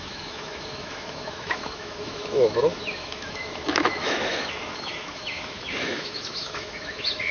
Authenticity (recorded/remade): remade